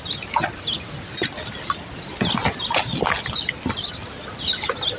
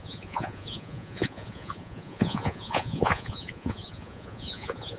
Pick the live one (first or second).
first